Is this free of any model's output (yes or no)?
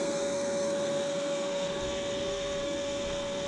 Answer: no